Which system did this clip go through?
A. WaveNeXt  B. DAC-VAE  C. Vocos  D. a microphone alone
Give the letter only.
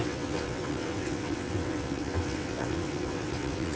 A